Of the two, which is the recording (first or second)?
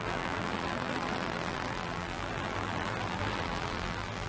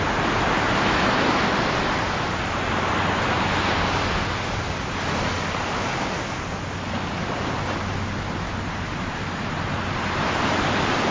second